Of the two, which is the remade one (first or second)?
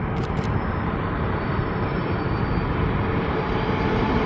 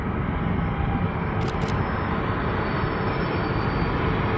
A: first